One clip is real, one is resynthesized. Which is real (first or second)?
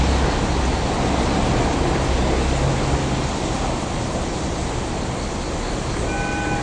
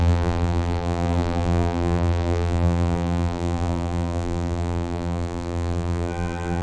first